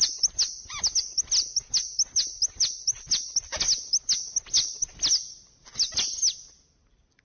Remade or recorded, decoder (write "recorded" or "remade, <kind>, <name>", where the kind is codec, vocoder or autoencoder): recorded